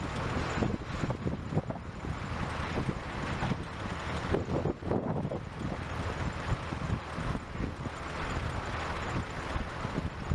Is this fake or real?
real